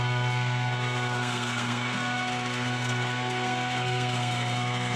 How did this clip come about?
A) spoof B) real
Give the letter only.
A